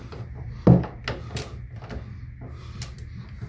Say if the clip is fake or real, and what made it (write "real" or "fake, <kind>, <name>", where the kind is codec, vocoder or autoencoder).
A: real